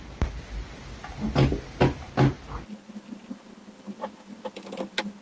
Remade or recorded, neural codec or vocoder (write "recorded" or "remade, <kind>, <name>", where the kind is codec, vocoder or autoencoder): recorded